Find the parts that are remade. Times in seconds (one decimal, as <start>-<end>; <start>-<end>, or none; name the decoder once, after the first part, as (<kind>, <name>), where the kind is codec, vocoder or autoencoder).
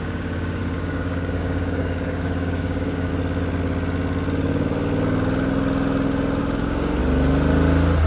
0.0-3.1 (codec, DAC); 6.4-7.0